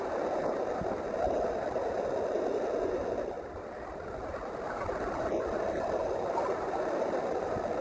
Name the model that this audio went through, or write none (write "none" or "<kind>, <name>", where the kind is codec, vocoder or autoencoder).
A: none